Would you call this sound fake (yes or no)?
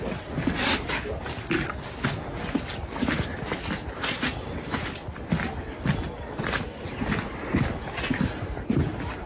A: no